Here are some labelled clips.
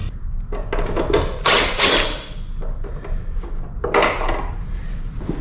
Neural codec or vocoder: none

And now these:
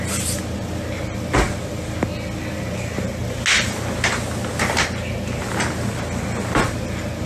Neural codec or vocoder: none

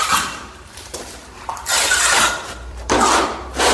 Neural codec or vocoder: vocoder, BigVGAN v2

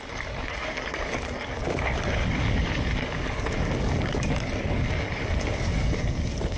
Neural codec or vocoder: codec, DAC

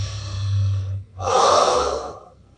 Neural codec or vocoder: codec, SNAC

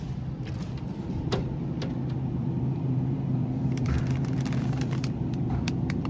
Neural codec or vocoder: vocoder, BigVGAN v2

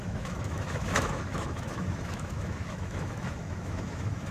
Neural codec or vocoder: autoencoder, DAC-VAE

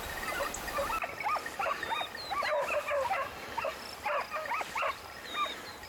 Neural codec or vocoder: vocoder, BigVGAN v2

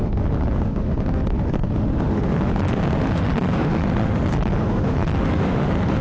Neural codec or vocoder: autoencoder, DAC-VAE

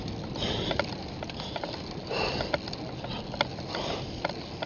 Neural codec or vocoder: none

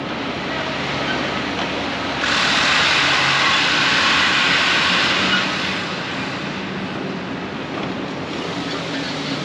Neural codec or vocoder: none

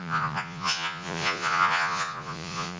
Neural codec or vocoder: vocoder, Vocos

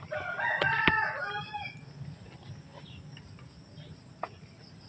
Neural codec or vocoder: none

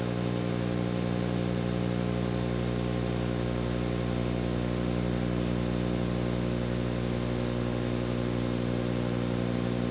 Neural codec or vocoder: none